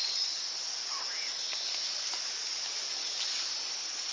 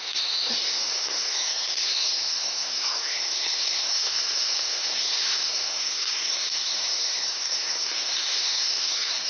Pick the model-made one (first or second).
second